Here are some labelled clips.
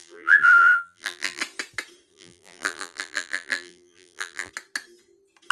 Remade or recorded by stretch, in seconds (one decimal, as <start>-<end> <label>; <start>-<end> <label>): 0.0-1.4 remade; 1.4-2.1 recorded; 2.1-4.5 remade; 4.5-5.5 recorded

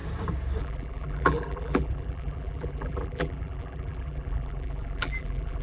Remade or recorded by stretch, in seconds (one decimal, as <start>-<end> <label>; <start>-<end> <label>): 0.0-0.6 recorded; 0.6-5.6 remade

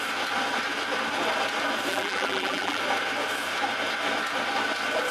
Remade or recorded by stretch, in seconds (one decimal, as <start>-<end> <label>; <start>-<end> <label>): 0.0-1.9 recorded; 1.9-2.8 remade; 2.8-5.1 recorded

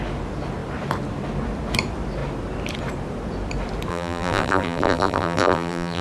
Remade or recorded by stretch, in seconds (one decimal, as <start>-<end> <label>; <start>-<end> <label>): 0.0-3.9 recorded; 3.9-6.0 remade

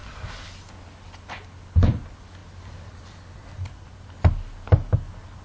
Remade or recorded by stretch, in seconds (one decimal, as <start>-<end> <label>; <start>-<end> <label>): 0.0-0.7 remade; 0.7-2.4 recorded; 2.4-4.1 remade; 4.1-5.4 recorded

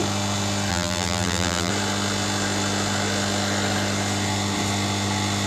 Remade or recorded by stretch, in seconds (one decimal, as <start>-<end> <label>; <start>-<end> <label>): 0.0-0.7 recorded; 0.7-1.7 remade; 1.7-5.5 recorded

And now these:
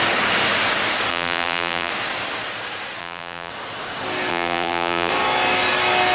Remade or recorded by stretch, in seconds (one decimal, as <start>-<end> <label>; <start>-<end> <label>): 0.0-1.1 recorded; 1.1-1.9 remade; 1.9-3.0 recorded; 3.0-3.5 remade; 3.5-4.3 recorded; 4.3-5.1 remade; 5.1-6.1 recorded

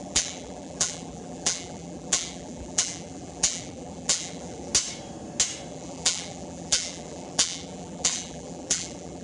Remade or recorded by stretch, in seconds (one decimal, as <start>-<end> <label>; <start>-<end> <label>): 0.0-4.7 remade; 4.7-5.7 recorded; 5.7-9.2 remade